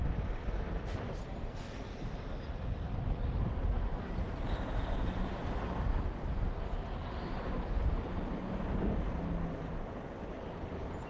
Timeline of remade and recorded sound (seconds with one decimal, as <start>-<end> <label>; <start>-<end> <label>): 0.0-1.2 recorded; 1.2-1.8 remade; 1.8-11.1 recorded